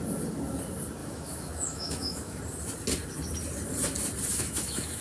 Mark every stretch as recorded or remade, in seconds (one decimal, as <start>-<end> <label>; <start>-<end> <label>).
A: 0.0-1.0 recorded; 1.0-2.4 remade; 2.4-4.3 recorded; 4.3-5.0 remade